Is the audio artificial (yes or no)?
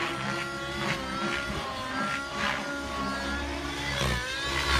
no